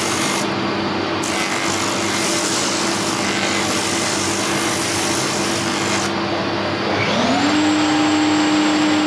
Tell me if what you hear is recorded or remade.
recorded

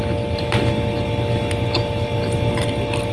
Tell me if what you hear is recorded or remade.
recorded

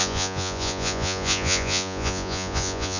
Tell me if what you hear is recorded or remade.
remade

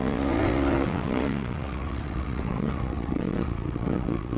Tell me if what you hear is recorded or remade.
remade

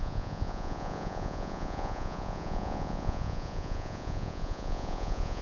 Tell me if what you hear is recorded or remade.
remade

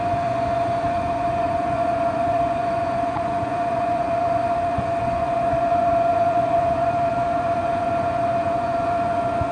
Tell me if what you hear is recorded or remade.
remade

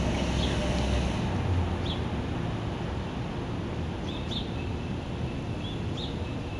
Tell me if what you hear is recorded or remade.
recorded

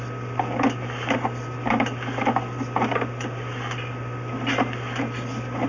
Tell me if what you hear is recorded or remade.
recorded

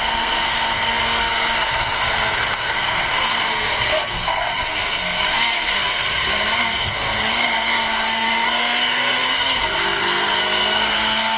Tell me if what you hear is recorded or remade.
remade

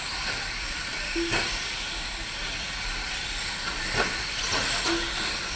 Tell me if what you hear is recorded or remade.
recorded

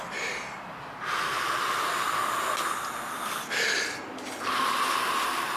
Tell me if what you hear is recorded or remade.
recorded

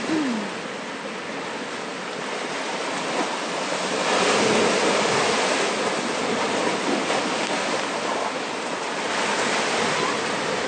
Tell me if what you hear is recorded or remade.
recorded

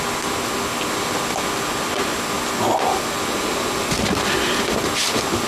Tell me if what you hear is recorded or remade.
recorded